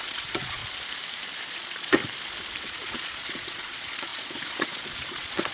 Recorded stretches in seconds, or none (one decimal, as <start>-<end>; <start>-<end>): 0.6-1.5; 2.0-2.6